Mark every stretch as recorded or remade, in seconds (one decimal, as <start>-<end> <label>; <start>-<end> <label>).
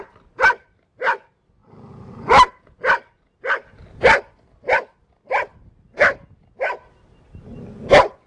0.0-8.3 recorded